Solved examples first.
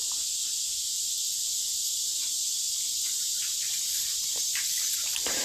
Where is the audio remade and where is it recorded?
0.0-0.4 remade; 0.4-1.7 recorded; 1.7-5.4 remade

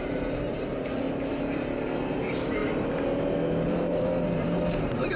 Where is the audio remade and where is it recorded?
0.0-0.7 remade; 0.7-1.3 recorded; 1.3-2.6 remade; 2.6-3.7 recorded; 3.7-5.2 remade